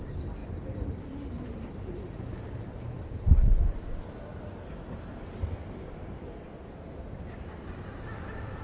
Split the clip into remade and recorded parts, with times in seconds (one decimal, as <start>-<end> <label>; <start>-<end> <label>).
0.0-3.5 remade; 3.5-8.2 recorded; 8.2-8.6 remade